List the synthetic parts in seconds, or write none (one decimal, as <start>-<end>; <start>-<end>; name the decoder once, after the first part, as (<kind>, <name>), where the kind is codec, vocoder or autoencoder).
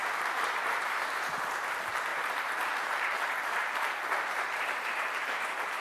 0.0-5.8 (vocoder, BigVGAN v2)